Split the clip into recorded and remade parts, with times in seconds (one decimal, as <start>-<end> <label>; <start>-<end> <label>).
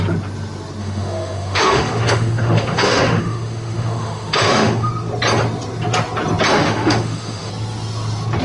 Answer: 0.0-0.8 recorded; 0.8-4.9 remade; 4.9-6.5 recorded; 6.5-7.5 remade; 7.5-8.4 recorded